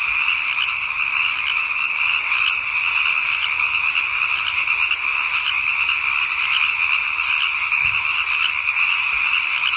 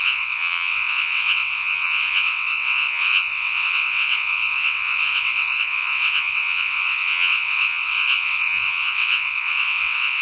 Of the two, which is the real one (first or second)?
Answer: first